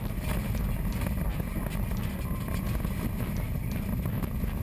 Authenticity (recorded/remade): recorded